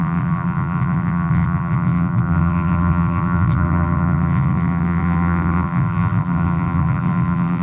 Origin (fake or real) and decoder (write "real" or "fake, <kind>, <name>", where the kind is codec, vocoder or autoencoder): fake, vocoder, BigVGAN v2